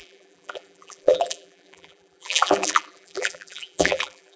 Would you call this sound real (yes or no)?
no